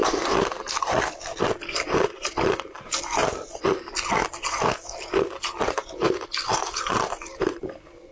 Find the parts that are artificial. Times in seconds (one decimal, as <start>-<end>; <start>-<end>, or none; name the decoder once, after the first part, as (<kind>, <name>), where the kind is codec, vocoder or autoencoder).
none